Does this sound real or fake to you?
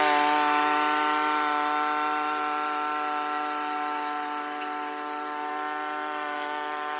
real